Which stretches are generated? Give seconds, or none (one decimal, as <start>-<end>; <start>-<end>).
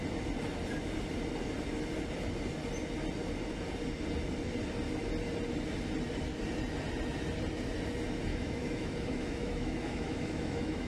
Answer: 8.3-10.9